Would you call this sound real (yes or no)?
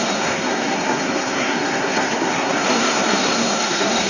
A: no